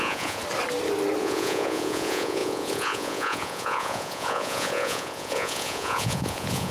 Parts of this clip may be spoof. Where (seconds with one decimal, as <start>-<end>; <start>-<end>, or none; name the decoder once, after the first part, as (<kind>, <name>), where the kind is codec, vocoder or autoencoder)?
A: 0.0-0.4 (vocoder, Vocos); 1.2-6.7